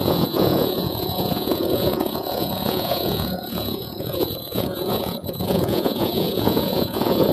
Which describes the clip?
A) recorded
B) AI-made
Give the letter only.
B